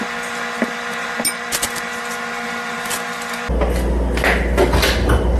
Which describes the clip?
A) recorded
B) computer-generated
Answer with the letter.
A